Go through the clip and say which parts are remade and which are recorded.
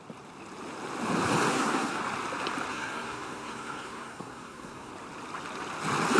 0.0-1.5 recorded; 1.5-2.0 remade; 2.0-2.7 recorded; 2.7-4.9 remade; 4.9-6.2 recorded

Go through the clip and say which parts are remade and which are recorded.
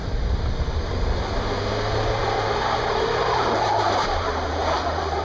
0.0-2.2 recorded; 2.2-5.2 remade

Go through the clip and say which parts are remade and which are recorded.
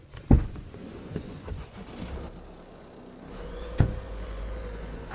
0.0-1.8 remade; 1.8-2.6 recorded; 2.6-5.1 remade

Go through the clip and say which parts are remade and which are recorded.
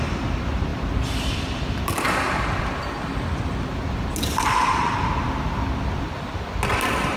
0.0-0.7 recorded; 0.7-2.6 remade; 2.6-7.2 recorded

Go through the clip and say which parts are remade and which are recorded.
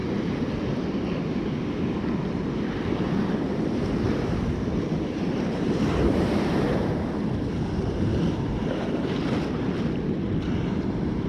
0.0-3.2 recorded; 3.2-8.1 remade; 8.1-11.3 recorded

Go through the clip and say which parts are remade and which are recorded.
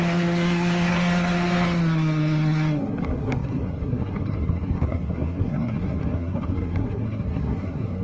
0.0-8.0 remade